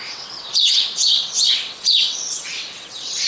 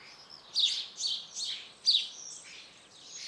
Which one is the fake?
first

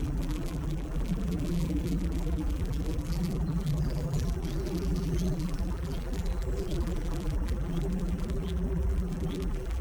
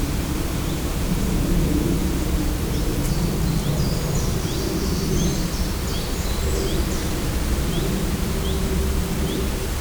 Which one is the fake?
first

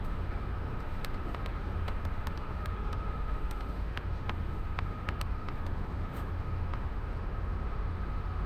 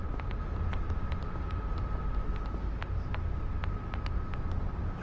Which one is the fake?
first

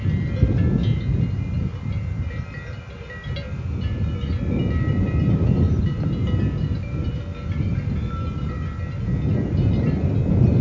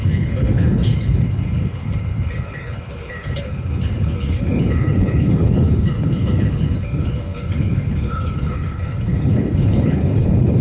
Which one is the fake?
second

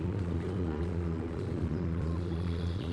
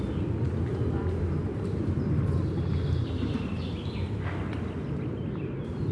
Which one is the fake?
first